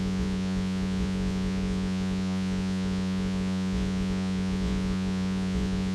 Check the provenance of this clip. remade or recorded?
remade